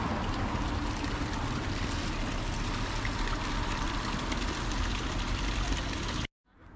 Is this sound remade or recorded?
recorded